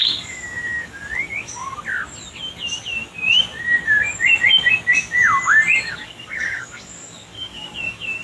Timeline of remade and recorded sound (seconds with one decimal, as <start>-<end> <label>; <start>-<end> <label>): 0.0-1.6 remade; 1.6-5.9 recorded; 5.9-8.2 remade